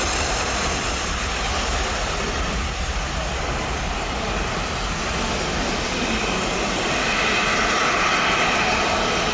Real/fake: real